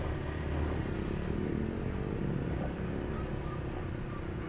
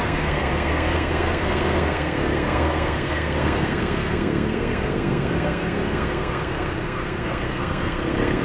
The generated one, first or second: second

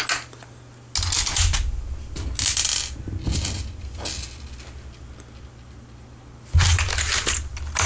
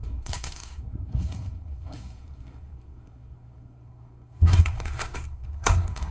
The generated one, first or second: second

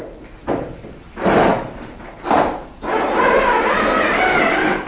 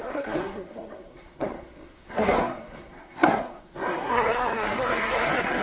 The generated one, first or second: second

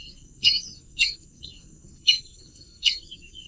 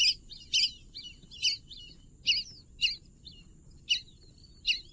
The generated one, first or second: first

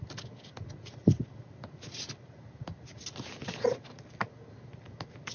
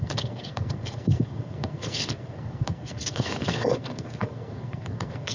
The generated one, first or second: second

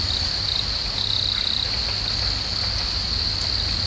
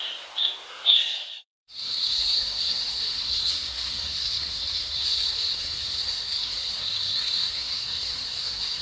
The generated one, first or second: second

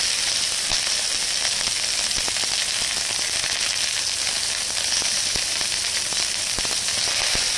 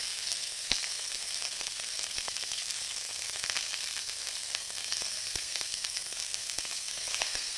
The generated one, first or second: second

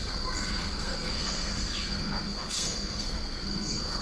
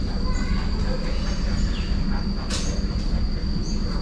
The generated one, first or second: first